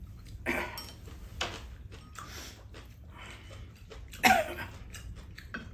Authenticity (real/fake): real